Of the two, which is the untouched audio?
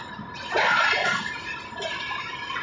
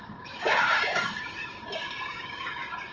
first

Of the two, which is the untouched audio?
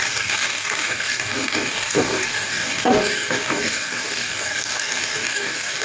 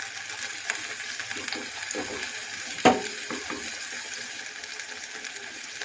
second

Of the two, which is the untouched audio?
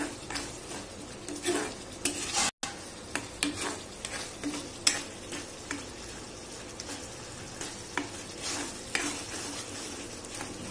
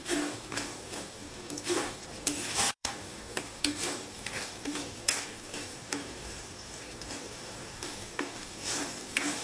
first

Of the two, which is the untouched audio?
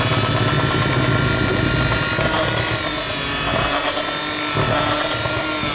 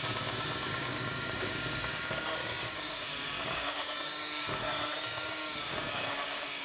first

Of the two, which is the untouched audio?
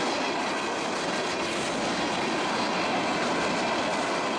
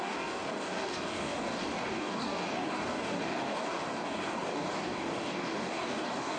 first